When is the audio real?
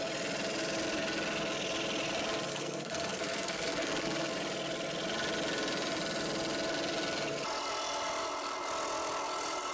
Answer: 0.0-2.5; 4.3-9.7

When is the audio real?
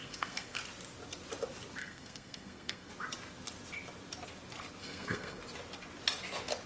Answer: 0.6-1.8; 2.9-4.8; 5.4-6.7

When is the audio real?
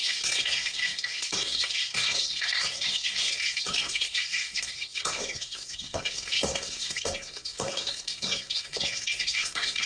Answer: none